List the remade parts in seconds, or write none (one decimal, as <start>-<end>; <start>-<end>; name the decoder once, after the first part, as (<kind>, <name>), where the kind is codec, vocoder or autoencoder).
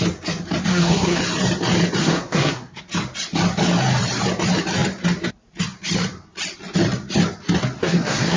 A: 0.7-1.2 (codec, SNAC); 2.0-2.8; 7.8-8.4